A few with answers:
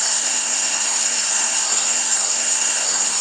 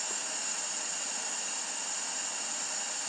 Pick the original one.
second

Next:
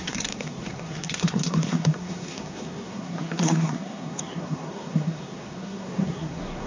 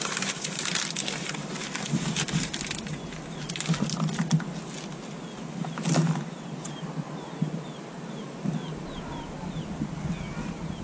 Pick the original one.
second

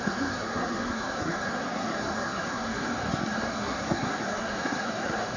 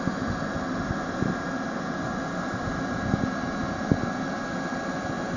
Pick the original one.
second